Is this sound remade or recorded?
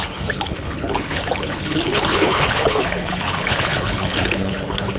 remade